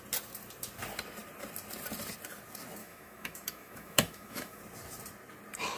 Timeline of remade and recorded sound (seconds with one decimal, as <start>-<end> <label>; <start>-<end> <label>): 0.0-2.8 recorded; 2.8-4.6 remade; 4.6-5.8 recorded